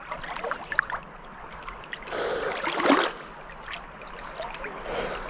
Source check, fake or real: real